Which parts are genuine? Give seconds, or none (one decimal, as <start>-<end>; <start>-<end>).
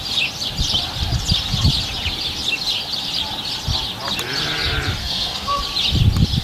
0.0-5.0; 5.6-6.4